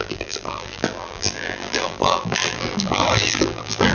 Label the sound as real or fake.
fake